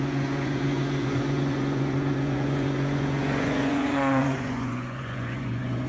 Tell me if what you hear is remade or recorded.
remade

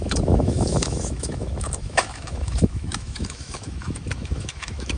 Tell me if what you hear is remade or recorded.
remade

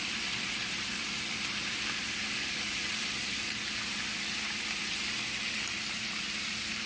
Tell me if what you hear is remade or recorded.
remade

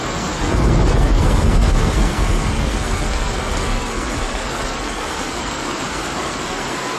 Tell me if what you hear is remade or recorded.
remade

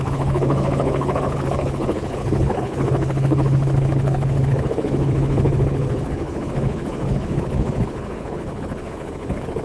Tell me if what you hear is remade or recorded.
remade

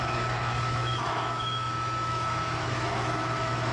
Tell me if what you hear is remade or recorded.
remade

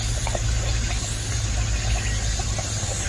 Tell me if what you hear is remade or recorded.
recorded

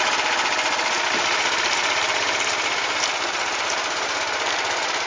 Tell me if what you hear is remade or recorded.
recorded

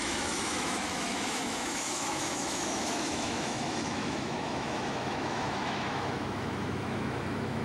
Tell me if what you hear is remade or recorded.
remade